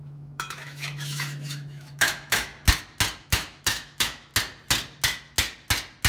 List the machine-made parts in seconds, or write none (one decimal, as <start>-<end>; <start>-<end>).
0.0-2.5; 3.2-4.3